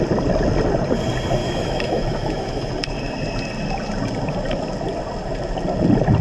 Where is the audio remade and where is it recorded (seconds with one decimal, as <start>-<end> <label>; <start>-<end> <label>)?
0.0-1.4 recorded; 1.4-2.7 remade; 2.7-6.2 recorded